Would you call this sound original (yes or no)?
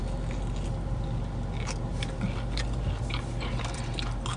yes